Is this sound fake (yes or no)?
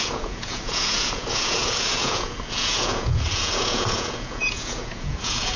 yes